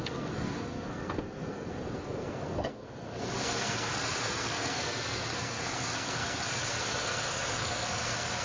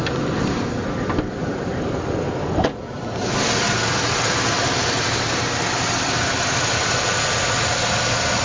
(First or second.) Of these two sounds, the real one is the second